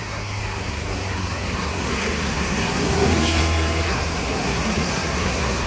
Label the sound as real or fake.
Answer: fake